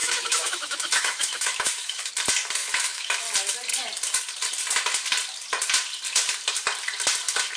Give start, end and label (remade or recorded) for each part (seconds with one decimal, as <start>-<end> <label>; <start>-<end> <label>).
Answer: 0.0-2.1 remade; 2.1-2.6 recorded; 2.6-3.2 remade; 3.2-7.6 recorded